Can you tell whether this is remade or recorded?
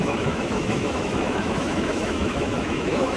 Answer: remade